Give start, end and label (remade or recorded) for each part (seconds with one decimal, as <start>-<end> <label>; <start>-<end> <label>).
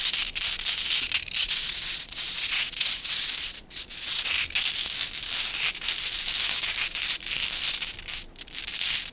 0.0-1.4 recorded; 1.4-4.3 remade; 4.3-9.1 recorded